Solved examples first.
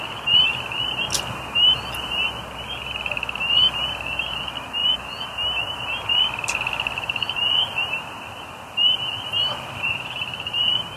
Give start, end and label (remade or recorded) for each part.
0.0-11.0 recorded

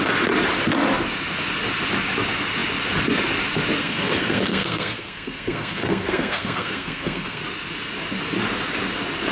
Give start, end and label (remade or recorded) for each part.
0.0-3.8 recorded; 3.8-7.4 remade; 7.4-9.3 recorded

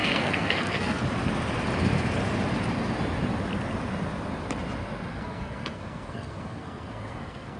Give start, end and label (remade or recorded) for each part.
0.0-1.0 remade; 1.0-5.1 recorded; 5.1-7.6 remade

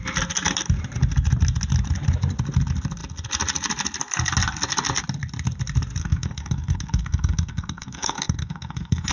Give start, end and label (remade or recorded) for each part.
0.0-6.0 recorded; 6.0-9.1 remade

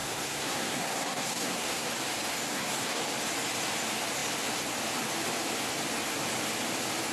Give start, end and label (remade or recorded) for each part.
0.0-1.9 remade; 1.9-2.5 recorded; 2.5-3.0 remade; 3.0-7.1 recorded